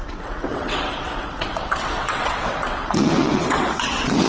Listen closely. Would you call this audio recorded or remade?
remade